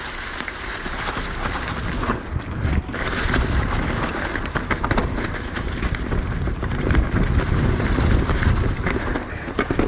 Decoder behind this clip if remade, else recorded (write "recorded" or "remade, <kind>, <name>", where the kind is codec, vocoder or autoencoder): recorded